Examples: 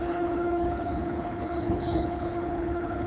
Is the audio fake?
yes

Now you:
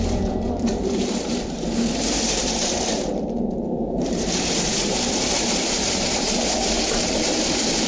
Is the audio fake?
yes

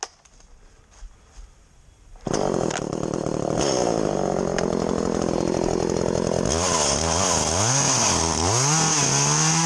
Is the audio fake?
no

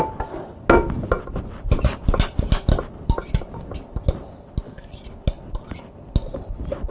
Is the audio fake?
no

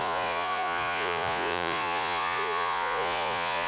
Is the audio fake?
yes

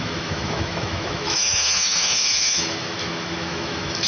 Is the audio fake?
yes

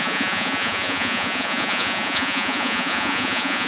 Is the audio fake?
yes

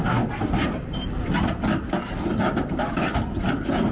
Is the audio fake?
no